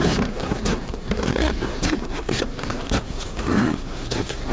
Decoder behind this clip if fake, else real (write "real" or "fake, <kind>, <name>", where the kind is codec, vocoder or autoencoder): fake, codec, SNAC